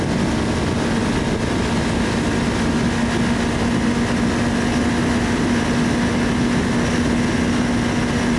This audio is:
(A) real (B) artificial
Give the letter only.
A